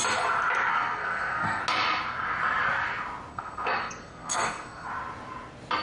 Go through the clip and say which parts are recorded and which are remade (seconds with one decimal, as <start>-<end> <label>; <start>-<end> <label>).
0.0-0.7 recorded; 0.7-1.6 remade; 1.6-3.3 recorded; 3.3-4.9 remade; 4.9-5.8 recorded